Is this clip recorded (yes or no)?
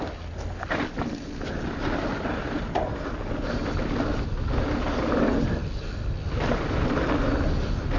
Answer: yes